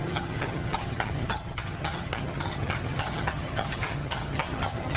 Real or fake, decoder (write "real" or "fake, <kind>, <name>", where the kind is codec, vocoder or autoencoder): fake, vocoder, HiFi-GAN